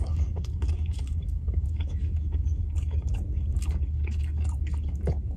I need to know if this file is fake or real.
fake